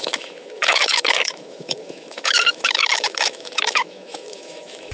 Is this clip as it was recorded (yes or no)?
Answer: no